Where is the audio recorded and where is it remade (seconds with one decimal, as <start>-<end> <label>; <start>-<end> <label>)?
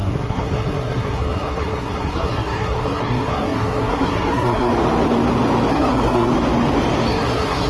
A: 0.0-4.7 remade; 4.7-5.7 recorded; 5.7-6.3 remade; 6.3-7.1 recorded; 7.1-7.7 remade